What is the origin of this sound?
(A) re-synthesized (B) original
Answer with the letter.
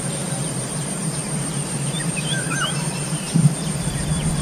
A